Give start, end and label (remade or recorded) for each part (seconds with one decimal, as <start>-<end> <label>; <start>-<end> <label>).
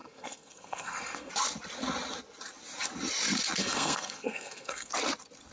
0.0-1.3 remade; 1.3-3.6 recorded; 3.6-4.9 remade; 4.9-5.5 recorded